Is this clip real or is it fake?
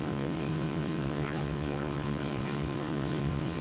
fake